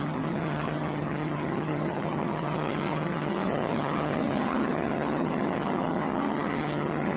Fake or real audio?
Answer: fake